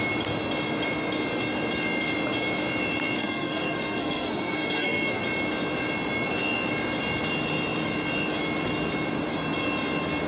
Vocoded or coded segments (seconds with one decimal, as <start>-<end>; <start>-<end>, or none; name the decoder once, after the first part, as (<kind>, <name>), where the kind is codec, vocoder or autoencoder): 3.2-5.2 (codec, SNAC)